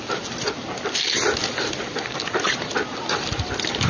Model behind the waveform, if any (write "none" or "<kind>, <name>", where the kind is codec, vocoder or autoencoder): none